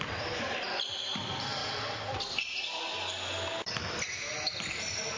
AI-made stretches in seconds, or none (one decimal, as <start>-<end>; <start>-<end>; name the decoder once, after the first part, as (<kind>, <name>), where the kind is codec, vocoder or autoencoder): 0.0-1.6 (vocoder, BigVGAN v2); 4.7-5.2